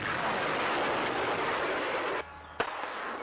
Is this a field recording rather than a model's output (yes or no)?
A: yes